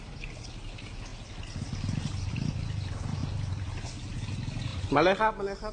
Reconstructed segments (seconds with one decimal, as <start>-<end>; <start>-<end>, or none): none